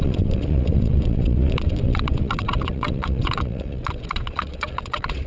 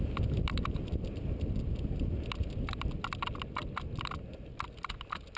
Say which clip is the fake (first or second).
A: first